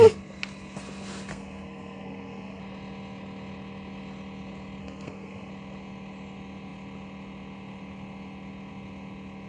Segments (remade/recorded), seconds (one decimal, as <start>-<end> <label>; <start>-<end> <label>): 0.0-1.3 recorded; 1.3-2.6 remade; 2.6-4.8 recorded; 4.8-5.5 remade; 5.5-9.5 recorded